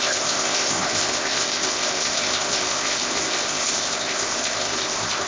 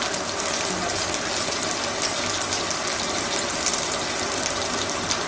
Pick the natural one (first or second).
second